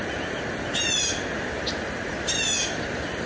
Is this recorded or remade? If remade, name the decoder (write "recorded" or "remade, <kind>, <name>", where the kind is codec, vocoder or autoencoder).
recorded